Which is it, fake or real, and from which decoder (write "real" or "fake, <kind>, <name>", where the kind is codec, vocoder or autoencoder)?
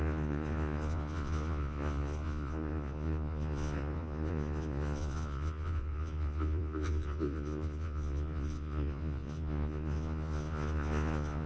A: fake, vocoder, Vocos